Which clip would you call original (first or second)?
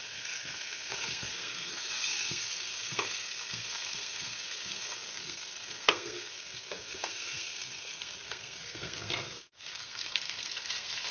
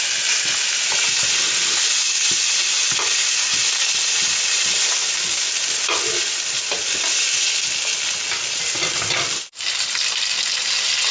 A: second